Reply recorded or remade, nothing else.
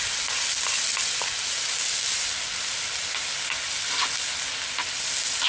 recorded